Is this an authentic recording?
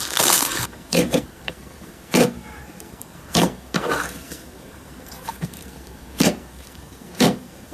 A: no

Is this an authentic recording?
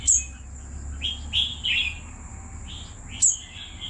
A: yes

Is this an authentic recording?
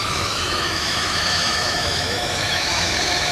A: no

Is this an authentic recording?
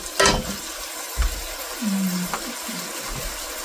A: yes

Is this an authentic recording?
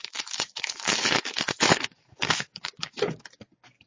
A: no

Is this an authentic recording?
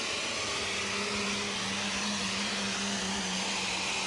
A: yes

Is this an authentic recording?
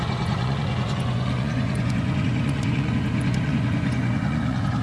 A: no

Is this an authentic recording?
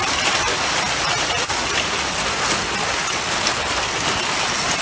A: yes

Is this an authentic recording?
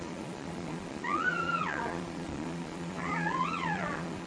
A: no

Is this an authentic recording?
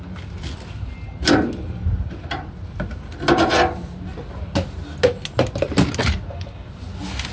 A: yes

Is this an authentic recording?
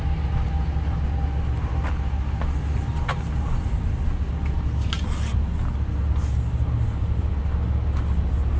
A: yes